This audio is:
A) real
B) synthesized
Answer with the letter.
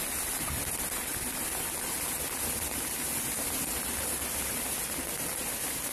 A